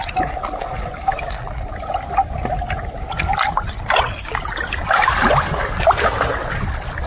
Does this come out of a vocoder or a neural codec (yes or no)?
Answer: no